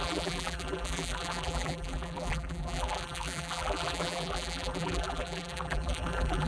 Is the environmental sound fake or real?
fake